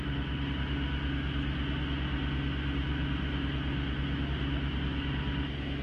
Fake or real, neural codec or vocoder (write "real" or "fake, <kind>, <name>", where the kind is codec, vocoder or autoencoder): real